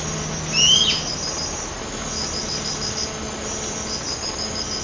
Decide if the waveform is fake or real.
real